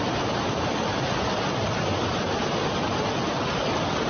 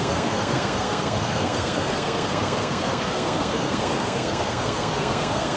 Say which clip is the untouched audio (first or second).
first